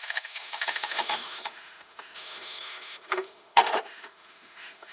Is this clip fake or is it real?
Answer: fake